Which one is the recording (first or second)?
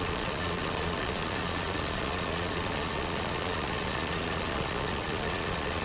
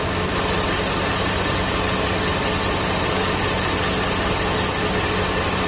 second